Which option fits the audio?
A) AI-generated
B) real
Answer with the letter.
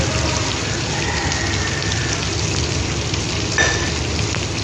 B